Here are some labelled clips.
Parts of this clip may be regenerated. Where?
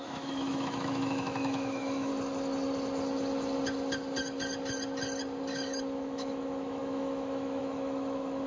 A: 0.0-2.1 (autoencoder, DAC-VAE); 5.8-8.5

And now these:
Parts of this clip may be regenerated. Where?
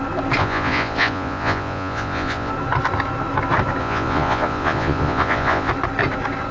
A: 0.4-2.5 (vocoder, Vocos); 3.8-5.7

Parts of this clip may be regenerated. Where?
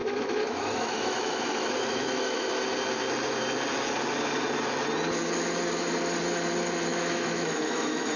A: 0.0-2.6 (autoencoder, DAC-VAE); 6.9-8.2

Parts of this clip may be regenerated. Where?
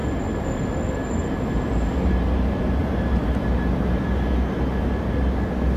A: 2.8-4.0 (vocoder, BigVGAN v2)